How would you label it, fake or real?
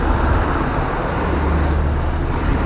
real